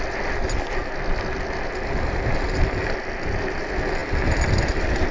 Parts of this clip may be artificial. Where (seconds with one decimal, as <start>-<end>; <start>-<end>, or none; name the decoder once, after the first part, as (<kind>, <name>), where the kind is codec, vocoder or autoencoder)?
none